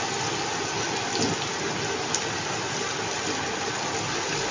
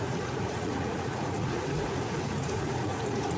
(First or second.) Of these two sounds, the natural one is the first